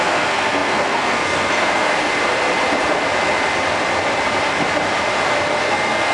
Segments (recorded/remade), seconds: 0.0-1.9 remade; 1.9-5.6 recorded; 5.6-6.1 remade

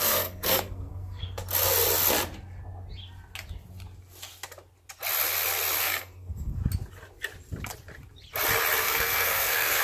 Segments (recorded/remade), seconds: 0.0-1.4 remade; 1.4-5.8 recorded; 5.8-6.6 remade; 6.6-8.8 recorded; 8.8-9.8 remade